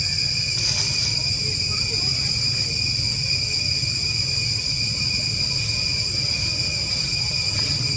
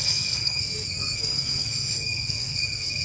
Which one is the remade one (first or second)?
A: second